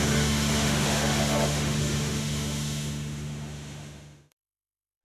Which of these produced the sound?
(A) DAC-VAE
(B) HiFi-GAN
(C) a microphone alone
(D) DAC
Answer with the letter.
A